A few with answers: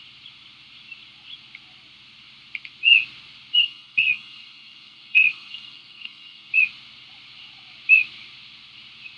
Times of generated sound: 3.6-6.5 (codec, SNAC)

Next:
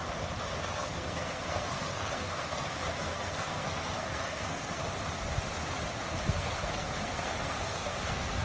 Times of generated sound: 0.6-4.8 (codec, SNAC); 6.2-8.4

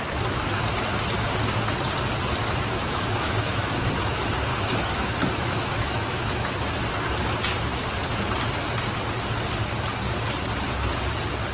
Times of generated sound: 2.4-3.9 (autoencoder, DAC-VAE); 4.5-6.7

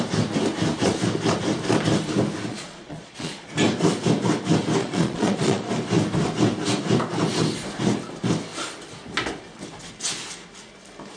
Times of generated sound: 2.5-3.5 (vocoder, Vocos); 4.8-5.7

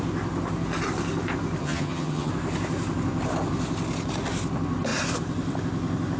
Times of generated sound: 1.6-2.3 (vocoder, HiFi-GAN)

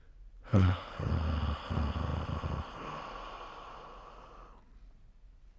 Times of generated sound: 0.5-1.1 (codec, HILCodec)